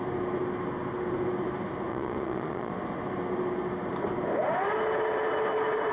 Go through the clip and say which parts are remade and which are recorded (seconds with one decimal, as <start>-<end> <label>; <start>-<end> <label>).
0.0-1.9 recorded; 1.9-2.7 remade; 2.7-5.9 recorded